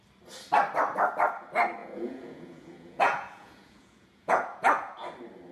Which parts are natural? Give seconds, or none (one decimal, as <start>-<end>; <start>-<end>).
0.0-1.8; 5.1-5.5